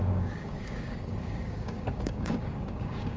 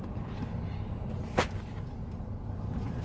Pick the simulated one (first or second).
first